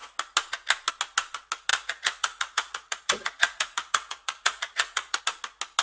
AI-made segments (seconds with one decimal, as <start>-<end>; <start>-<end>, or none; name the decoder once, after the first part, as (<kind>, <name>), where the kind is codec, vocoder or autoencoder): 1.7-5.2 (vocoder, Vocos)